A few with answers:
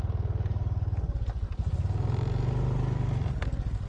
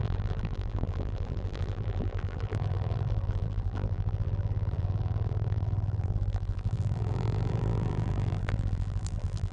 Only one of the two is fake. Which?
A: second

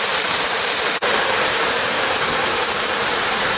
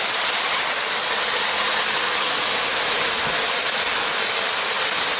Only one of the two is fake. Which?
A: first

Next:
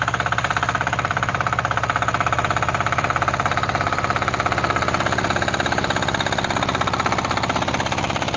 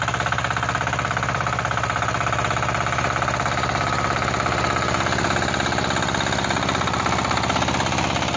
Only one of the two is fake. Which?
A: first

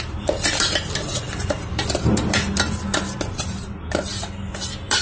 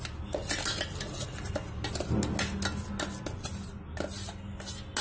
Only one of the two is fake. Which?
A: first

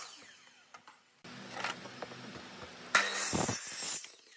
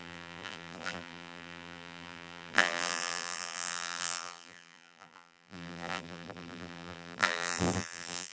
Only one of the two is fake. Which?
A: second